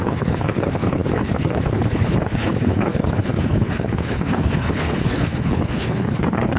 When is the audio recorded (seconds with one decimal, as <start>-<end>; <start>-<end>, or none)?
none